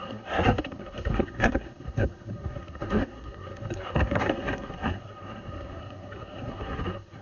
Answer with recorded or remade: remade